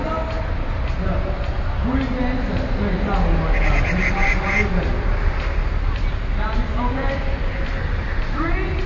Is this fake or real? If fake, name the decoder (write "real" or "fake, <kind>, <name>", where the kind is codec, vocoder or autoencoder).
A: real